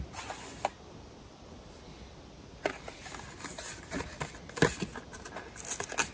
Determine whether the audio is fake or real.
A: real